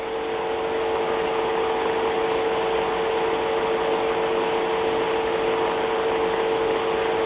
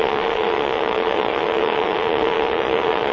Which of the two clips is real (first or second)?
first